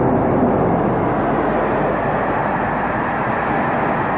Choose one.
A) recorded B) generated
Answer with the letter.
A